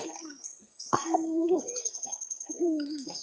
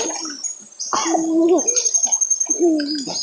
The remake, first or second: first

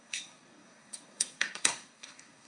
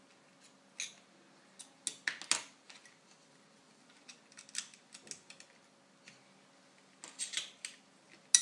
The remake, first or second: first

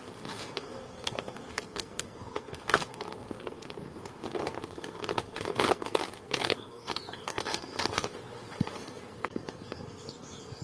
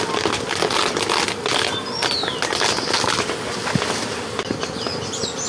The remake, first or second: first